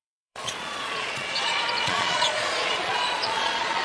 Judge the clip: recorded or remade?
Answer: remade